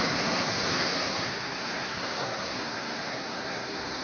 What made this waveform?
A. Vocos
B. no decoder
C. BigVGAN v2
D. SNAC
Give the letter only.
D